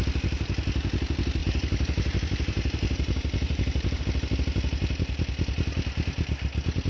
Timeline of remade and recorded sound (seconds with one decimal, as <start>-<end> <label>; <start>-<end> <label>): 0.0-1.4 recorded; 1.4-4.0 remade; 4.0-6.9 recorded